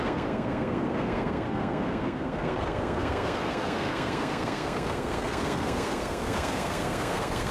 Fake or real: fake